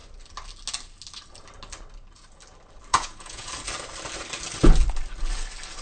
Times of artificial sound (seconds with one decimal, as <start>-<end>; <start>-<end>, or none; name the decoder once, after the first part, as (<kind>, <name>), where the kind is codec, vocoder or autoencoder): 2.9-3.5 (vocoder, Vocos)